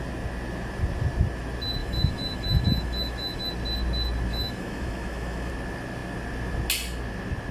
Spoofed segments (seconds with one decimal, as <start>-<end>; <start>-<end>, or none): 1.8-3.5; 4.3-5.5